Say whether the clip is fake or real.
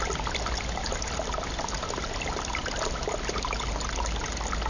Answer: real